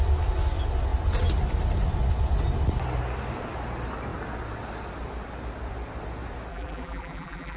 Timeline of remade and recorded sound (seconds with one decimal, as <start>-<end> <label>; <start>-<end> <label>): 0.0-6.5 recorded; 6.5-7.6 remade